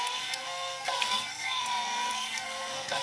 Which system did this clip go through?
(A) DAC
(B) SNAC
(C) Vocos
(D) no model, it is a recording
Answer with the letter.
B